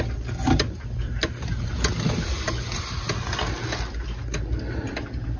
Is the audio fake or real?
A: real